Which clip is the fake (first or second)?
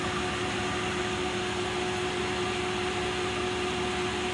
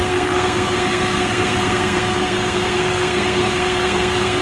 second